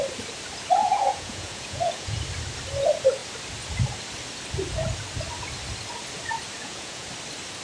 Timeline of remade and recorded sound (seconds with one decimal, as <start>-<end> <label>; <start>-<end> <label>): 0.0-0.8 recorded; 0.8-2.2 remade; 2.2-6.6 recorded; 6.6-7.1 remade; 7.1-7.6 recorded